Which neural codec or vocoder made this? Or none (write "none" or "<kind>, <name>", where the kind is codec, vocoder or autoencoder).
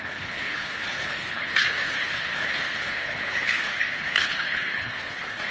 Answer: codec, HILCodec